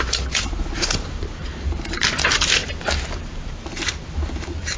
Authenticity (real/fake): fake